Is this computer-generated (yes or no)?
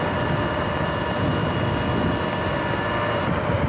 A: no